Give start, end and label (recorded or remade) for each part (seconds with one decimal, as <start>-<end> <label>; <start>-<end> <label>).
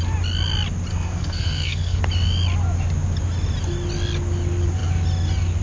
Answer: 0.0-0.9 recorded; 0.9-2.0 remade; 2.0-5.6 recorded